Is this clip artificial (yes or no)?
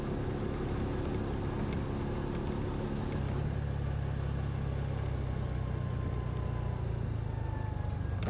no